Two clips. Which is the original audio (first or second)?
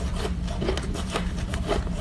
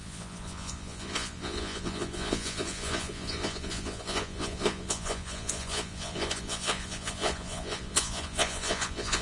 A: first